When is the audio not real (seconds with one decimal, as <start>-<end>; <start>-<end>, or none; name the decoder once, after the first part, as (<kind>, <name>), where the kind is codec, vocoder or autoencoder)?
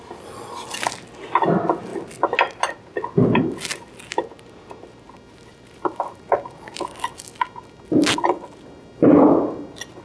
none